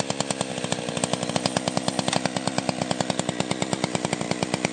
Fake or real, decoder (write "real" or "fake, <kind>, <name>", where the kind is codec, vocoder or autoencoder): real